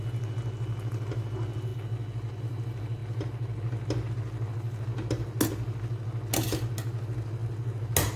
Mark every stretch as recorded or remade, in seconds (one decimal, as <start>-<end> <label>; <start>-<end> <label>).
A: 0.0-8.2 recorded